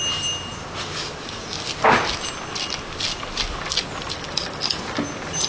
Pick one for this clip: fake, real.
real